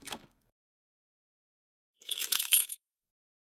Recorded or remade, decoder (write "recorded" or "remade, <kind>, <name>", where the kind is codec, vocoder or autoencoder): remade, codec, SNAC